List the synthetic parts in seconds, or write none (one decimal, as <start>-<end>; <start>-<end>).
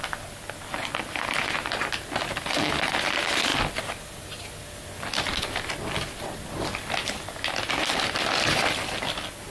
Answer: none